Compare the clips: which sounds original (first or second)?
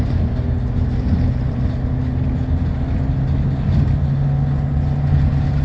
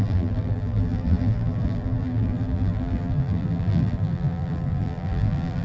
first